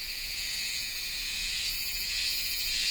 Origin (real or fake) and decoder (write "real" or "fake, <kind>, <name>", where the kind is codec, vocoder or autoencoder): fake, vocoder, Vocos